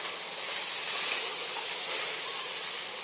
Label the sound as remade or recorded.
recorded